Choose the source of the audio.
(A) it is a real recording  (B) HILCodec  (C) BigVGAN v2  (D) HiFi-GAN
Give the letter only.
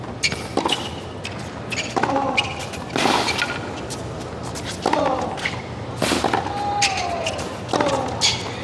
A